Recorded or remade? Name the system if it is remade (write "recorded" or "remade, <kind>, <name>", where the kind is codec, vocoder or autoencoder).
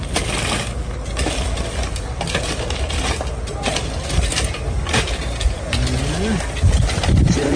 recorded